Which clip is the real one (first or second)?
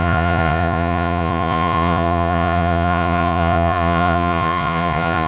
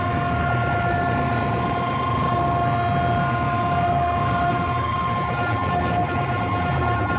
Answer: second